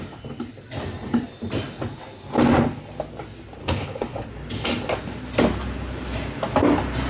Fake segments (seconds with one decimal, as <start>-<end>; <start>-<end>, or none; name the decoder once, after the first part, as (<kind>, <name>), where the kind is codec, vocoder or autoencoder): 3.6-4.3 (codec, HILCodec)